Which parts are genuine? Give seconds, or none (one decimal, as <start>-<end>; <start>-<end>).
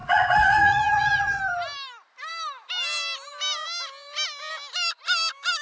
1.4-5.6